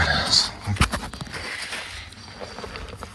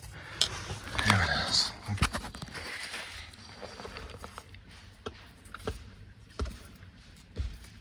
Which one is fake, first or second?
second